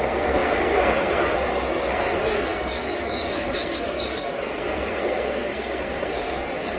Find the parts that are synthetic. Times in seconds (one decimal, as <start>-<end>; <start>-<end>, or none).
0.0-6.8